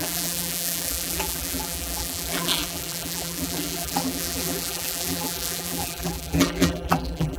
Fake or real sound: fake